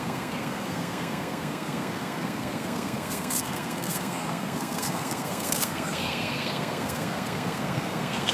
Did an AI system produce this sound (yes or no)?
yes